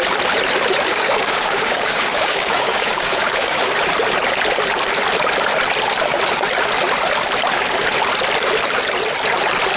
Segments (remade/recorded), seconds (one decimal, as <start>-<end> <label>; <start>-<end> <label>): 0.0-0.9 recorded; 0.9-3.7 remade; 3.7-9.8 recorded